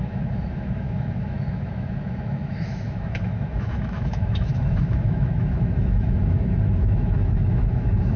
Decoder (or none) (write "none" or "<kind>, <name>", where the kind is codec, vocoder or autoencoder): autoencoder, DAC-VAE